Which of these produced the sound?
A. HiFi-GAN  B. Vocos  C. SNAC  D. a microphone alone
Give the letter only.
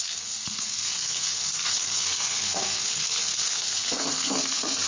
C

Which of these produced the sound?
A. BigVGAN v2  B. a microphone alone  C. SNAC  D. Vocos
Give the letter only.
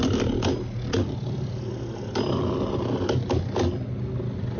B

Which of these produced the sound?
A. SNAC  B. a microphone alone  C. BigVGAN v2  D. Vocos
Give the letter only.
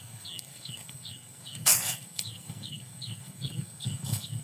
A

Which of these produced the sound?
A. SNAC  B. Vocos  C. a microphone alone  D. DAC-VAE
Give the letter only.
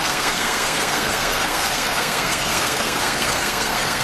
A